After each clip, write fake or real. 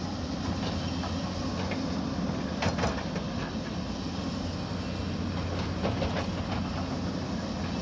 real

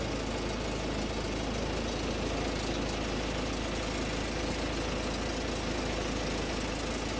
real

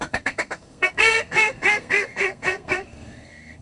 fake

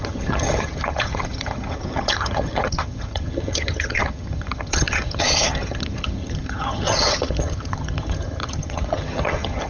fake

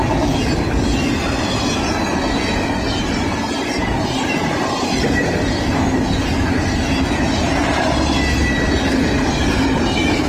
real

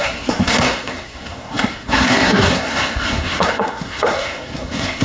fake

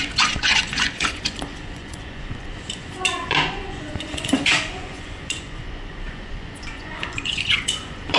fake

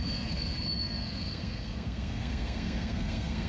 fake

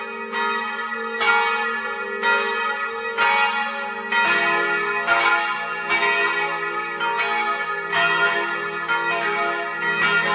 real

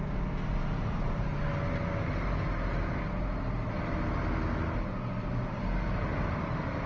real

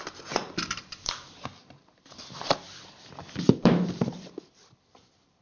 fake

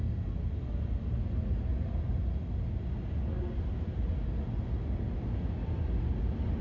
real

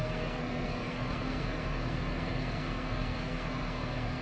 fake